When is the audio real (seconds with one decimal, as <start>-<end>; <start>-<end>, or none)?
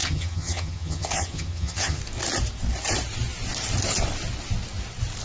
2.0-5.2